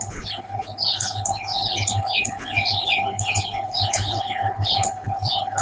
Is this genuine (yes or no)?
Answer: no